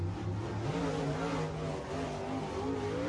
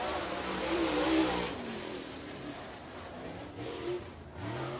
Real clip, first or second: first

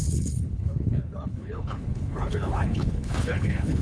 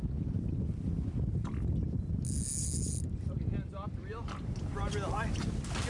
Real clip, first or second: second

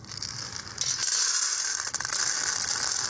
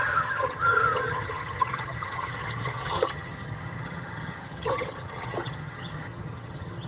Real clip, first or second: first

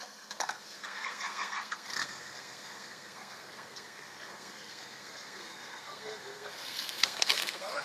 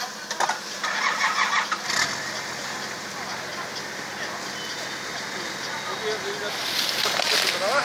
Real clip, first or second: second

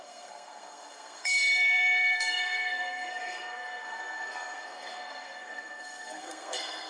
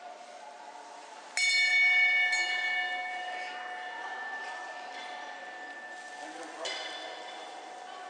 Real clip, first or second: second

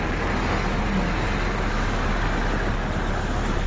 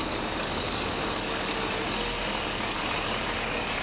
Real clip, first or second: first